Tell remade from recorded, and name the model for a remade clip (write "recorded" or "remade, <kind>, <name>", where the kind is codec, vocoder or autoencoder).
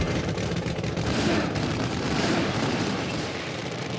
remade, vocoder, BigVGAN v2